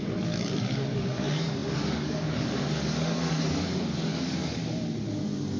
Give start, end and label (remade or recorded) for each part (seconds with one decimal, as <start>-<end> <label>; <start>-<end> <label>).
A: 0.0-4.6 remade; 4.6-5.6 recorded